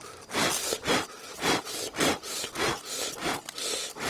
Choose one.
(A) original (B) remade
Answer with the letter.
A